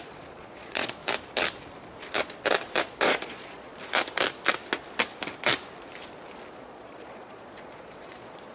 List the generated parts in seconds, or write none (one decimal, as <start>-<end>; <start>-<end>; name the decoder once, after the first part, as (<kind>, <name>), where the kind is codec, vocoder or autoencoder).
0.0-1.0 (vocoder, Vocos); 2.8-3.7; 6.5-8.5